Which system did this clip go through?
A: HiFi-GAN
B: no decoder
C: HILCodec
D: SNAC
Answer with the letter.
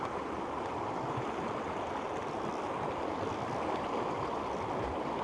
B